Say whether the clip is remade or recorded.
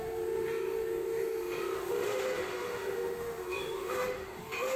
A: remade